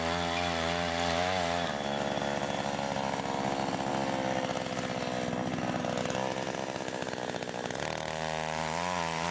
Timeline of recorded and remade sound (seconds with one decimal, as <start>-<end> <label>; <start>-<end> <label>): 0.0-9.3 recorded